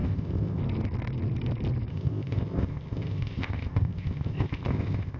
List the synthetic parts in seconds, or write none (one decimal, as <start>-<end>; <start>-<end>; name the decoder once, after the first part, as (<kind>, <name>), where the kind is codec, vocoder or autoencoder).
0.0-0.6 (codec, ZipCodec); 1.9-5.2